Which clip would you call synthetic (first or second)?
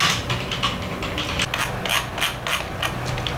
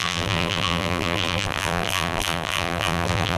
second